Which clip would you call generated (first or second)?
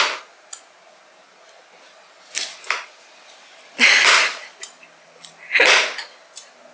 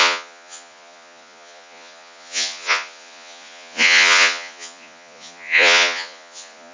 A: second